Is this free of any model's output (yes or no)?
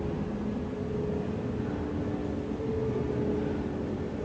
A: yes